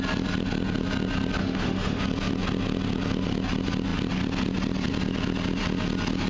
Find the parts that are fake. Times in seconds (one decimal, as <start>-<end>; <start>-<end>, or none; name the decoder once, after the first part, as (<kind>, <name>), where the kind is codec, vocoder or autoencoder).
1.4-2.0 (autoencoder, DAC-VAE)

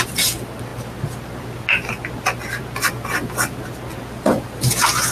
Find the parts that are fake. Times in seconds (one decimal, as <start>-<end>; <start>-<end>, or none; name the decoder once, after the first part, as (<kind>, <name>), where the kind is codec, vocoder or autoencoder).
none